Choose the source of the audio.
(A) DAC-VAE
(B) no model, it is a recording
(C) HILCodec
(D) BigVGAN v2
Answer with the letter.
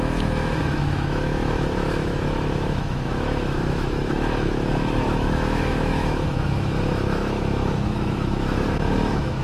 A